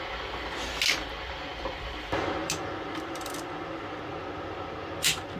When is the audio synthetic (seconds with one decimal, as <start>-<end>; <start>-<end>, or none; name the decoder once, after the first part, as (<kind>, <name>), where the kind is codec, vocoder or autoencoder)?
none